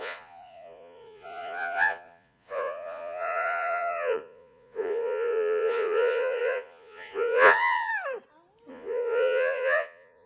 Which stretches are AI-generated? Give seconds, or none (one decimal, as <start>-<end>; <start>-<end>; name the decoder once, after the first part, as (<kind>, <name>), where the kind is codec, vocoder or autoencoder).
0.0-7.9 (vocoder, Vocos); 8.7-10.3